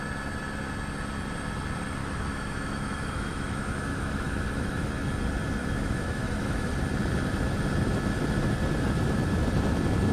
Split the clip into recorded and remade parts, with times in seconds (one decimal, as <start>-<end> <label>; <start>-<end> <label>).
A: 0.0-2.0 recorded; 2.0-4.9 remade; 4.9-5.6 recorded; 5.6-6.7 remade; 6.7-10.1 recorded